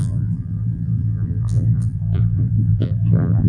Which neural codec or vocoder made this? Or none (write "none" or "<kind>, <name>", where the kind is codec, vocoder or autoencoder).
vocoder, BigVGAN v2